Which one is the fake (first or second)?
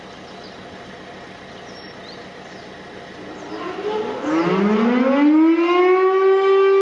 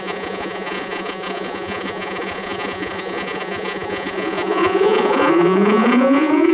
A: second